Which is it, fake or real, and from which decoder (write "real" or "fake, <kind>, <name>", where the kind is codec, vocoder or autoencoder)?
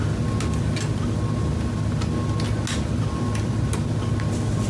real